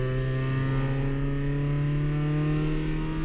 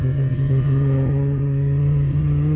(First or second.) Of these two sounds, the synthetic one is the second